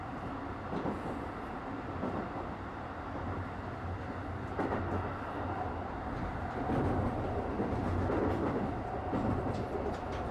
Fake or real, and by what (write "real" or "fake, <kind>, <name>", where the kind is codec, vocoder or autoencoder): real